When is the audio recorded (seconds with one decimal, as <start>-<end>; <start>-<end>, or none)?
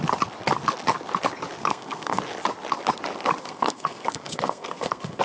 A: 0.0-1.6; 2.2-3.4